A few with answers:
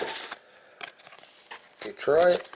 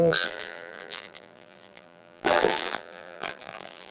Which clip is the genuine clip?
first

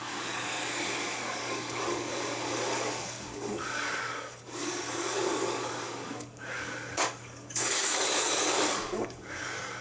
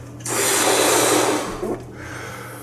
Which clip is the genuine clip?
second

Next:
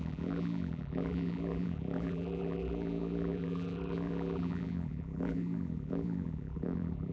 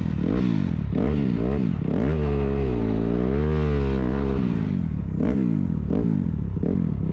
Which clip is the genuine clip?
second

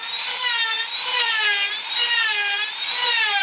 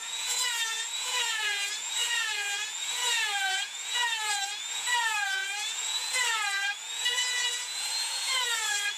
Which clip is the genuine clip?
first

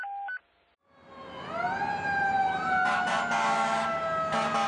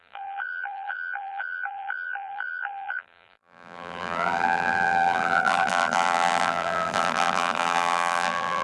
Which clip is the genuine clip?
first